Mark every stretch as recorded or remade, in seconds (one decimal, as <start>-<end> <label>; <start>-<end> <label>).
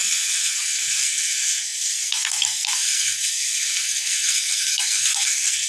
0.0-5.7 remade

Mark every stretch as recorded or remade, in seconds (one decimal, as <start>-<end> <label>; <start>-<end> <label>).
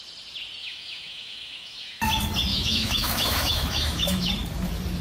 0.0-0.6 recorded; 0.6-2.0 remade; 2.0-2.5 recorded; 2.5-4.3 remade; 4.3-5.0 recorded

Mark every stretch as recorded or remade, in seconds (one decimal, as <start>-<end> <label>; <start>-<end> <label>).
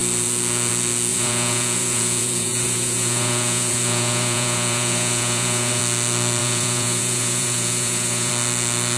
0.0-1.1 recorded; 1.1-5.8 remade; 5.8-6.4 recorded; 6.4-8.3 remade; 8.3-9.0 recorded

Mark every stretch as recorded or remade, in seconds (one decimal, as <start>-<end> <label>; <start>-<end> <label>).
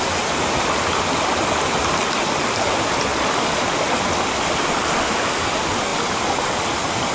0.0-5.9 recorded; 5.9-7.1 remade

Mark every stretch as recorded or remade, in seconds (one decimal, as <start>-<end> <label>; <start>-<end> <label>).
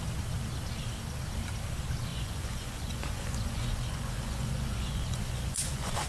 0.0-2.1 recorded; 2.1-6.1 remade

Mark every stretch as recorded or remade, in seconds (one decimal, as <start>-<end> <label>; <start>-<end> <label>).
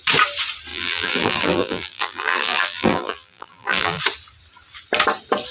0.0-0.7 recorded; 0.7-4.0 remade; 4.0-5.5 recorded